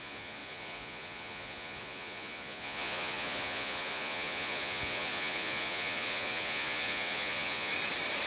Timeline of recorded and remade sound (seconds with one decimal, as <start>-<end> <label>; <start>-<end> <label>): 0.0-7.7 remade; 7.7-8.3 recorded